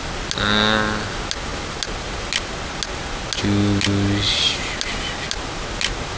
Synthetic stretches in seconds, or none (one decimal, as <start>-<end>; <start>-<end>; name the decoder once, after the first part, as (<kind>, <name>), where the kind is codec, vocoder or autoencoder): none